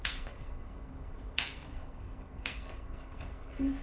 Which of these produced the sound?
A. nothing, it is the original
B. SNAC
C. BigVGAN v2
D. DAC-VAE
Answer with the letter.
B